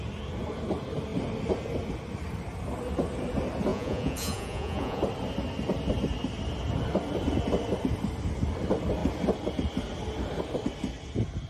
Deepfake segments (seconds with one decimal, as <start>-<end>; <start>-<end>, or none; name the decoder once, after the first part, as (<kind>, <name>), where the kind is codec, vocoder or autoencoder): 3.7-5.0 (vocoder, Vocos)